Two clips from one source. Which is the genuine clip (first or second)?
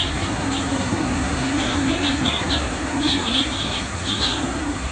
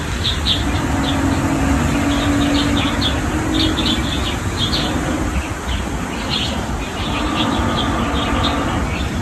second